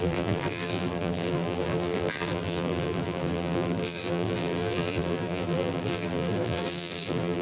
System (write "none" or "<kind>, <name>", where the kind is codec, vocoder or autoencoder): vocoder, BigVGAN v2